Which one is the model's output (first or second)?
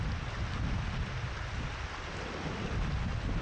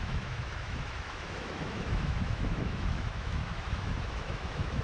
second